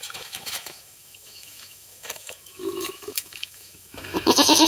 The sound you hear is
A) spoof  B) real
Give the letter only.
A